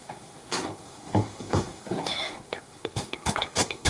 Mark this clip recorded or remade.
remade